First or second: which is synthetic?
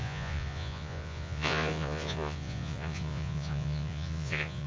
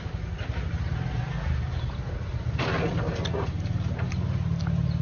first